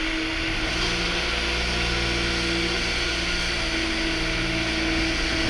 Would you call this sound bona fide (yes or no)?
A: yes